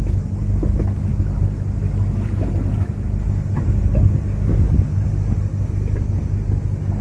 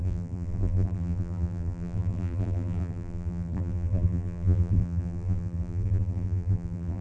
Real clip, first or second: first